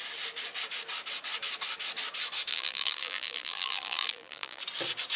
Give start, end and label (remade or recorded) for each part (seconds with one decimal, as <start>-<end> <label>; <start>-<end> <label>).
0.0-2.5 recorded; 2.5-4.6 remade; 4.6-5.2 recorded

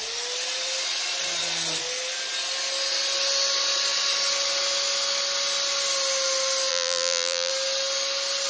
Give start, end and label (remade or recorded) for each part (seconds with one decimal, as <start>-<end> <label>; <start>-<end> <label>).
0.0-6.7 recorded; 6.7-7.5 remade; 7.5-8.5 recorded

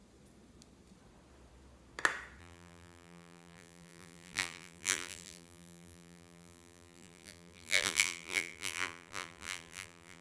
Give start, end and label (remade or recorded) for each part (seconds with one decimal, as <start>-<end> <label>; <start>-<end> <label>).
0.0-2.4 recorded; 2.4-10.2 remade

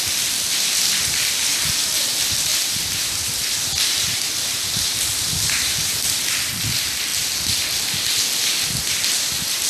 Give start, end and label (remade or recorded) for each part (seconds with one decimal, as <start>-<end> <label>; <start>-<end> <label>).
0.0-2.5 recorded; 2.5-6.5 remade; 6.5-9.7 recorded

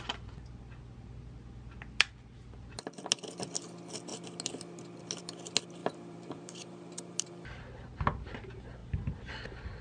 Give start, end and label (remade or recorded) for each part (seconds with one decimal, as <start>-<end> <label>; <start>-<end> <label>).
0.0-5.8 recorded; 5.8-7.3 remade; 7.3-9.8 recorded

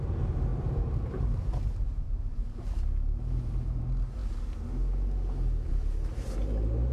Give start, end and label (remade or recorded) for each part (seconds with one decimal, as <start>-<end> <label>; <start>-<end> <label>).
0.0-0.5 recorded; 0.5-3.8 remade; 3.8-6.9 recorded